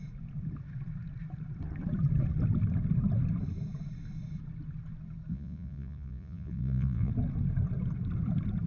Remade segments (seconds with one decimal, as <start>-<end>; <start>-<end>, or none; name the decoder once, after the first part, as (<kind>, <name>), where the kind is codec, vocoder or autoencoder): 5.3-7.1 (vocoder, Vocos)